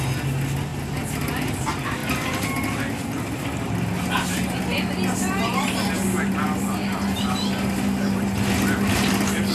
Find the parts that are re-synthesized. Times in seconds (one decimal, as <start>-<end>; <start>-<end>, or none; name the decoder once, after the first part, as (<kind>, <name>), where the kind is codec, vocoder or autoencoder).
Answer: none